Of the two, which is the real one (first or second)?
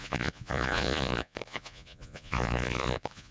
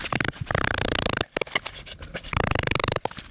second